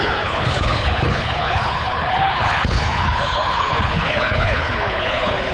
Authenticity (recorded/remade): remade